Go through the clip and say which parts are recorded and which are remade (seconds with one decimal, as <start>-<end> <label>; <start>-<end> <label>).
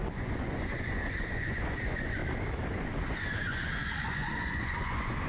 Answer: 0.0-2.2 remade; 2.2-2.7 recorded; 2.7-5.3 remade